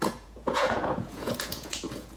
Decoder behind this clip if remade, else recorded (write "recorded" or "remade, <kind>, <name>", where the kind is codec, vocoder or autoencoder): remade, vocoder, Vocos